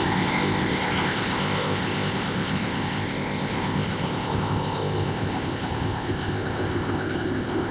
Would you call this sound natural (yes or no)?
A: no